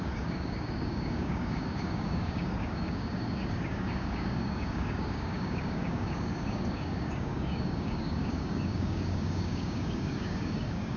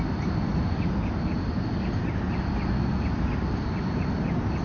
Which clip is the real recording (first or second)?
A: second